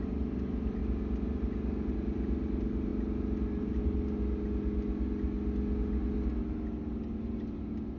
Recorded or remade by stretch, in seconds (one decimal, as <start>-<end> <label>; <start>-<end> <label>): 0.0-8.0 recorded

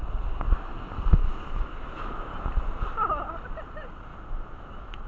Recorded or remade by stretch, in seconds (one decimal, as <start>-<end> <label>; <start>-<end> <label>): 0.0-1.2 recorded; 1.2-2.3 remade; 2.3-4.1 recorded; 4.1-5.1 remade

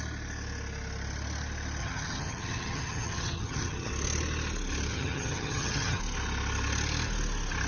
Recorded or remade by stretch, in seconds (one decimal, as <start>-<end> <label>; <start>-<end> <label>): 0.0-1.8 recorded; 1.8-3.9 remade; 3.9-4.9 recorded; 4.9-6.0 remade; 6.0-7.7 recorded

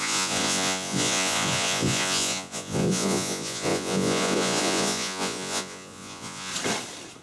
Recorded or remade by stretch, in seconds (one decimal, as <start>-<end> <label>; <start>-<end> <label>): 0.0-6.5 remade; 6.5-7.2 recorded

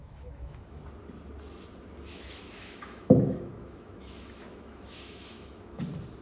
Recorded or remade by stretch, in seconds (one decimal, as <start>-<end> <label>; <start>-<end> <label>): 0.0-0.8 remade; 0.8-2.1 recorded; 2.1-5.8 remade; 5.8-6.2 recorded

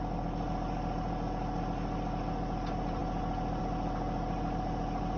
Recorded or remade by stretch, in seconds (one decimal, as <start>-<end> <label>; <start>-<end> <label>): 0.0-5.2 recorded